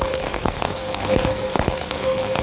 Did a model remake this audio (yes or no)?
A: yes